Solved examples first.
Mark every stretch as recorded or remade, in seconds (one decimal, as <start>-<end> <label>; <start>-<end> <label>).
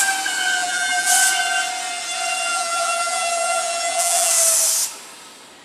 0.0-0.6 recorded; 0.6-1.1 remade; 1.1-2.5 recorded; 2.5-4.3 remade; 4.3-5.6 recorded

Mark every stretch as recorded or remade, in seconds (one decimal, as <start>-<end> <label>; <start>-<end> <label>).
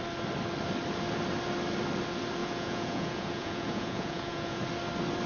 0.0-2.4 recorded; 2.4-4.6 remade; 4.6-5.3 recorded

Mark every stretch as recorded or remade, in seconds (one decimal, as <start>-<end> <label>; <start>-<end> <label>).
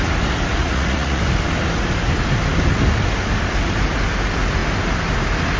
0.0-0.6 recorded; 0.6-1.2 remade; 1.2-5.6 recorded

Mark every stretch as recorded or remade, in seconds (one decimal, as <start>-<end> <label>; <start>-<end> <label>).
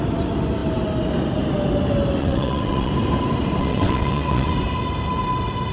0.0-2.2 recorded; 2.2-2.9 remade; 2.9-3.6 recorded; 3.6-4.5 remade; 4.5-5.7 recorded